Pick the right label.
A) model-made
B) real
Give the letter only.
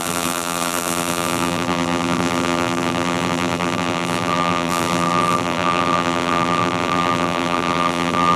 A